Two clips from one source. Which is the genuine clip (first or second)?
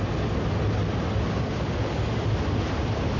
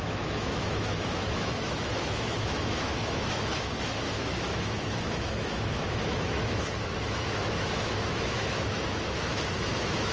first